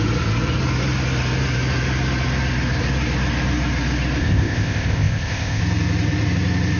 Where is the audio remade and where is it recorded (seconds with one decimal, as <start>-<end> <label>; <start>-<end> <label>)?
0.0-4.2 recorded; 4.2-5.6 remade; 5.6-6.8 recorded